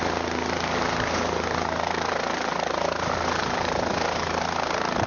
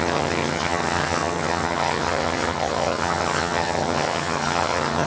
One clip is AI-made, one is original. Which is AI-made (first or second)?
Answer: second